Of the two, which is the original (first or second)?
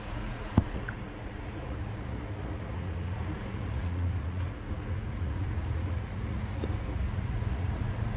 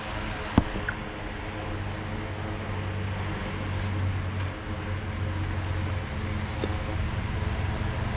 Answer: second